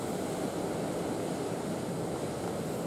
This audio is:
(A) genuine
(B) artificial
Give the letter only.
A